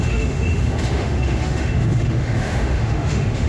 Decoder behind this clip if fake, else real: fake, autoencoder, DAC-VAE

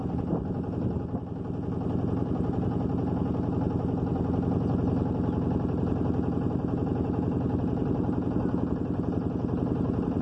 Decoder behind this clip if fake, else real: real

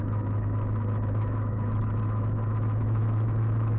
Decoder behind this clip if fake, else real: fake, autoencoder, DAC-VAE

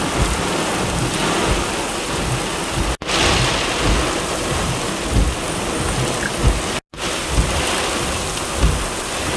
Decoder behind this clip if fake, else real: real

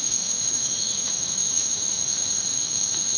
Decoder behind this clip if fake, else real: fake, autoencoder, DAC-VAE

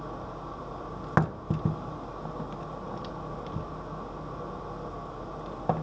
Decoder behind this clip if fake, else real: real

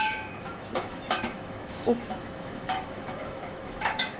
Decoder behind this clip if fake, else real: fake, autoencoder, DAC-VAE